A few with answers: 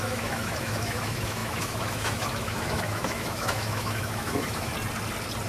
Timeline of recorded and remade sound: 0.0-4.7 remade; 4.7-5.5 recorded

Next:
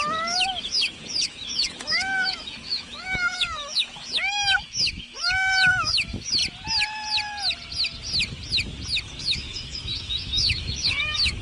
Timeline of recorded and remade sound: 0.0-6.4 remade; 6.4-9.0 recorded; 9.0-11.4 remade

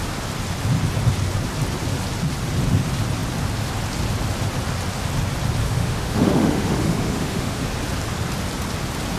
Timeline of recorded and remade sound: 0.0-5.6 recorded; 5.6-7.6 remade; 7.6-9.2 recorded

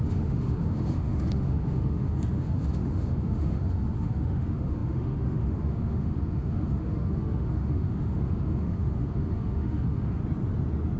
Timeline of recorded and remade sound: 0.0-10.2 remade; 10.2-11.0 recorded

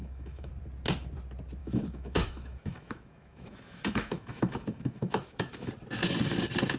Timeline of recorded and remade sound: 0.0-0.5 remade; 0.5-1.6 recorded; 1.6-5.7 remade; 5.7-6.8 recorded